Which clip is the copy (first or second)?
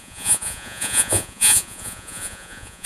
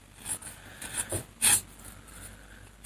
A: first